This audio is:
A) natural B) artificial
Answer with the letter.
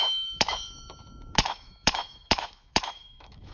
B